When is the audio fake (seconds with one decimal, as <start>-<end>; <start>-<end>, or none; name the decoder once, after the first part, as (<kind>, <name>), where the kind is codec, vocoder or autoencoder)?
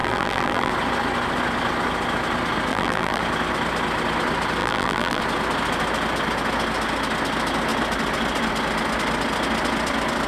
0.0-0.7 (vocoder, BigVGAN v2); 2.7-3.2; 4.6-5.2